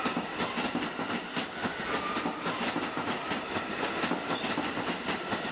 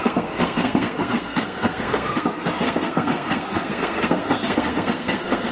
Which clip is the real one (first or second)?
first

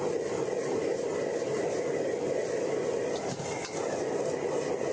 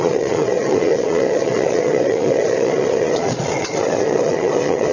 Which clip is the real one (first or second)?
first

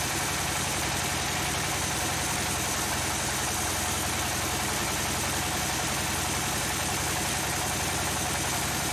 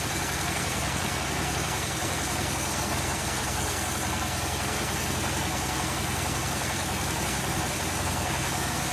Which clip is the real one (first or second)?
first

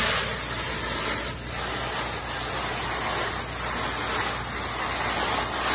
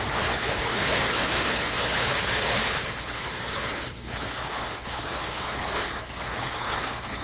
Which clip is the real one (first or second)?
first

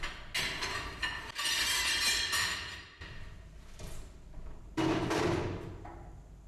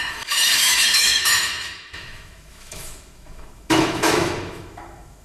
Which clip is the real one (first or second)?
first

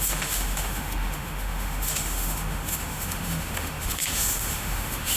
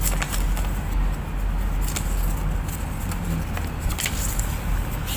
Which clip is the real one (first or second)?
second